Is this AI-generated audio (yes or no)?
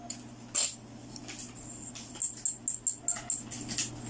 no